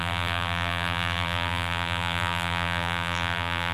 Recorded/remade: remade